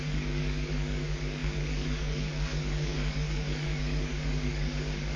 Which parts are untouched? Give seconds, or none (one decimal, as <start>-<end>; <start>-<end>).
none